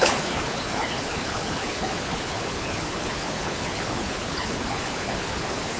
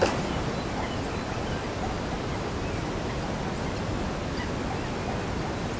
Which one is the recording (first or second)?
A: second